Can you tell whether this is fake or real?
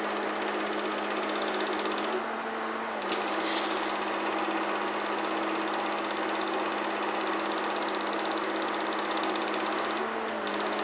real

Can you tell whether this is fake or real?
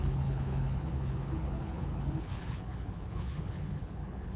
fake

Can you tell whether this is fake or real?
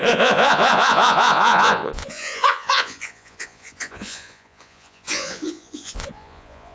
fake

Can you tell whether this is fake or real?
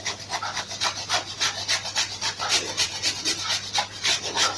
real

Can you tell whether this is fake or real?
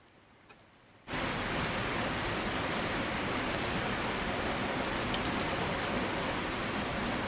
real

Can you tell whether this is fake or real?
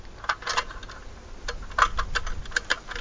real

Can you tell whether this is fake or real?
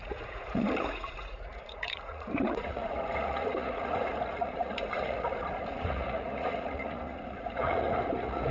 fake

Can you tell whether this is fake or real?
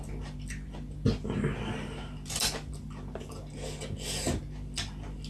real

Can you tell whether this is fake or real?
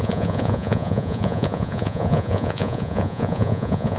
fake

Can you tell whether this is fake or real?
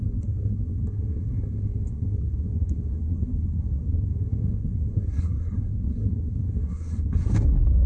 fake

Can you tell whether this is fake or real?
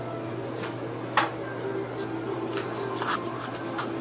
real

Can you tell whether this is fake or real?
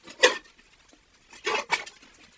real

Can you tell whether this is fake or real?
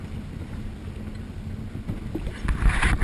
real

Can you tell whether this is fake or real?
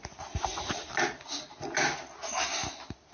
real